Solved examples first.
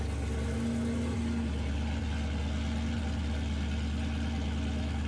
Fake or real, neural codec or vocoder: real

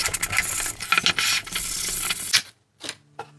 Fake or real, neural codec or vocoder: real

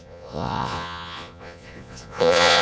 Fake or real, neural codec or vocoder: fake, vocoder, Vocos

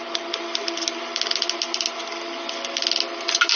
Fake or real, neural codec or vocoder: real